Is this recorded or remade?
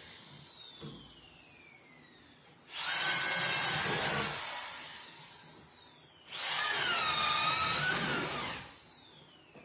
recorded